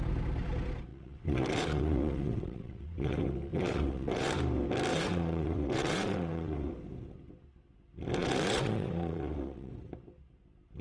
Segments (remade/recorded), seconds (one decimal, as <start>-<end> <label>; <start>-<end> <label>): 0.0-0.9 recorded; 0.9-4.3 remade; 4.3-4.9 recorded; 4.9-6.7 remade; 6.7-8.2 recorded; 8.2-9.7 remade; 9.7-10.8 recorded